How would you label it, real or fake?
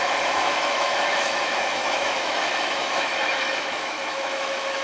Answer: fake